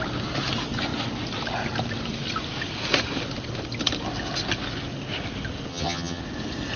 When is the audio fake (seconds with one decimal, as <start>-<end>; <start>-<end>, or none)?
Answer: 5.7-6.2